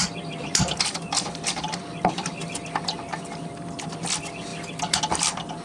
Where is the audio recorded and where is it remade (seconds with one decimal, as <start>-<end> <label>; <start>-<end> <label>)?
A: 0.0-0.8 remade; 0.8-1.8 recorded; 1.8-2.5 remade; 2.5-4.5 recorded; 4.5-5.0 remade; 5.0-5.6 recorded